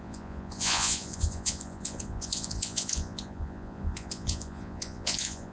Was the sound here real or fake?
fake